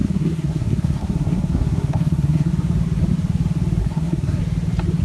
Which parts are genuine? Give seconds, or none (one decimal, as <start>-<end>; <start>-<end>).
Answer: 2.5-3.8; 4.4-5.0

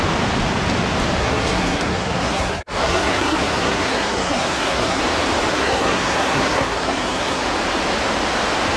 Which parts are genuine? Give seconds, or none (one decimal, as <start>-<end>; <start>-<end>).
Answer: 0.0-1.2; 5.0-5.5; 7.4-8.8

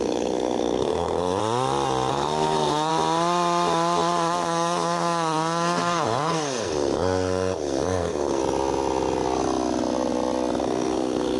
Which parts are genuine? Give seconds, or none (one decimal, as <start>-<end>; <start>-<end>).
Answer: 1.4-2.1; 2.9-4.3; 8.4-10.6

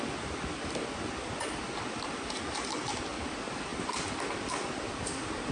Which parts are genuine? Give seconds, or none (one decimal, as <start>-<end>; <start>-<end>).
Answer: 0.0-5.5